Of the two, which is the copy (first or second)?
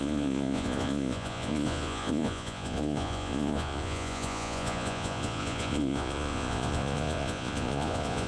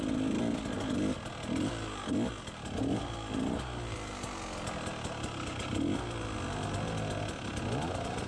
first